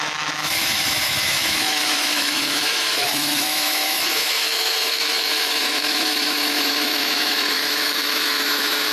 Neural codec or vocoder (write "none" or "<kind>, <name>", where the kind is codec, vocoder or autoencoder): autoencoder, DAC-VAE